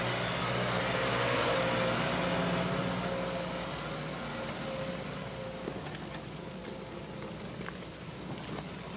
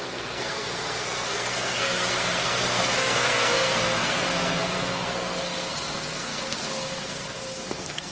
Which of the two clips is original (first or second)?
first